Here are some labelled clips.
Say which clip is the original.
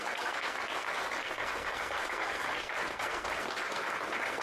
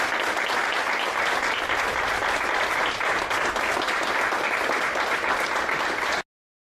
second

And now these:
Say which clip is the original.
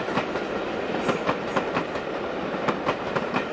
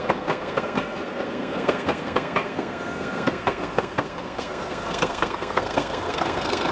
first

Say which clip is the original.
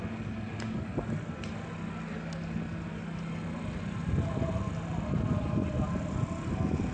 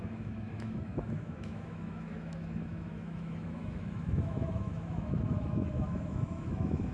first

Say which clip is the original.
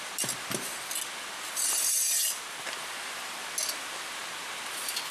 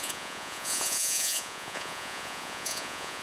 first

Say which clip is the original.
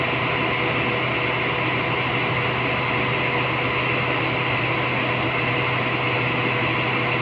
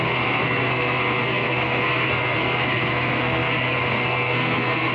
first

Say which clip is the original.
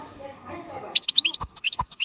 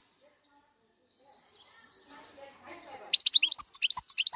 second